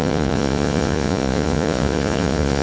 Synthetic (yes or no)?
yes